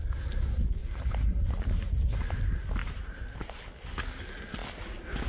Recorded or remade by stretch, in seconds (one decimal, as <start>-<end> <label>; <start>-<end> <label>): 0.0-0.8 recorded; 0.8-1.3 remade; 1.3-2.8 recorded; 2.8-3.4 remade; 3.4-5.3 recorded